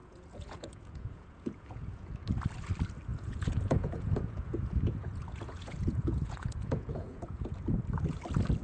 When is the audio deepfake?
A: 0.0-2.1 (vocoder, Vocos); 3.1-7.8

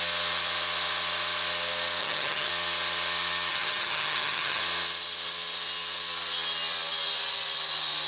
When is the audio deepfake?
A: 2.0-2.5 (vocoder, HiFi-GAN); 3.5-4.6

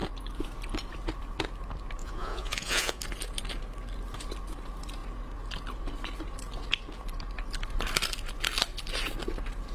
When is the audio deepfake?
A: 2.0-3.0 (vocoder, Vocos)

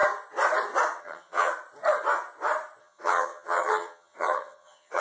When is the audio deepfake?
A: 1.0-1.5 (vocoder, HiFi-GAN); 2.8-5.0

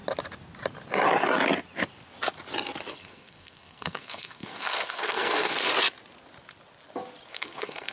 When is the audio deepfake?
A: 2.9-5.7 (codec, SNAC); 7.3-7.9